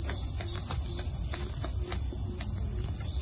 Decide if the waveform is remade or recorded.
recorded